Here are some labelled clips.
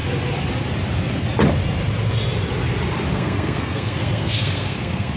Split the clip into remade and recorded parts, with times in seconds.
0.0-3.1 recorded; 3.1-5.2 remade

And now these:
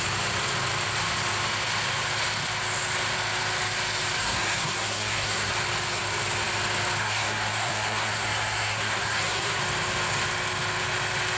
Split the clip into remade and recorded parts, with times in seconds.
0.0-4.2 recorded; 4.2-5.5 remade; 5.5-7.0 recorded; 7.0-9.6 remade; 9.6-11.4 recorded

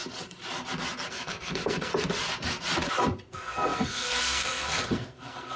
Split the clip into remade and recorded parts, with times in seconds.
0.0-1.1 recorded; 1.1-1.9 remade; 1.9-3.3 recorded; 3.3-5.6 remade

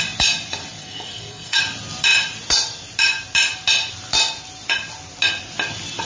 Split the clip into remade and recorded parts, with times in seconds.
0.0-0.8 recorded; 0.8-1.6 remade; 1.6-6.0 recorded

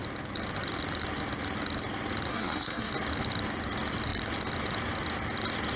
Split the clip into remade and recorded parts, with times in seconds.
0.0-2.3 recorded; 2.3-2.9 remade; 2.9-5.8 recorded